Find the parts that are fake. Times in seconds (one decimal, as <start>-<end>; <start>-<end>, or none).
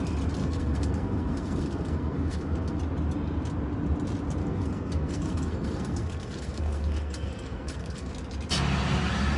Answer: 0.4-2.8; 4.4-8.1